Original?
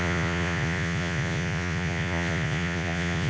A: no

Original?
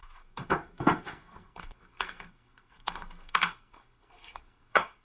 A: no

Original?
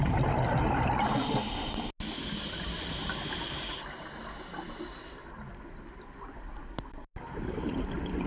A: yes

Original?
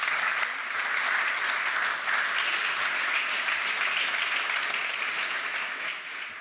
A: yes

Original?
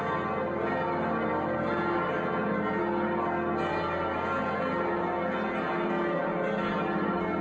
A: yes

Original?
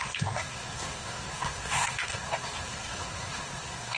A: no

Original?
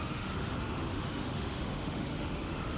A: no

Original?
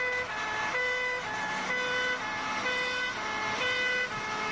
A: yes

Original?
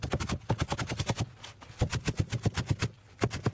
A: yes